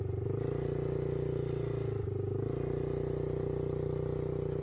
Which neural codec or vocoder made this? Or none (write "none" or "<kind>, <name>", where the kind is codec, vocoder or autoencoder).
none